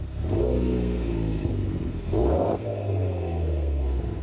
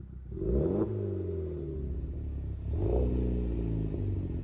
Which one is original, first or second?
second